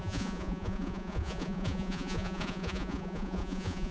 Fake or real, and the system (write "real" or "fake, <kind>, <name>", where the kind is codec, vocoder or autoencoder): fake, vocoder, Vocos